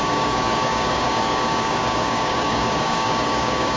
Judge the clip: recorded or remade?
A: remade